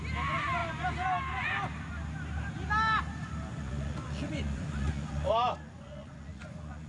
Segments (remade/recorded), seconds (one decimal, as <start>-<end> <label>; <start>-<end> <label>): 0.0-3.5 recorded; 3.5-6.9 remade